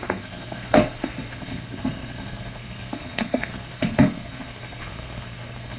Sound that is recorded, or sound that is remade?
remade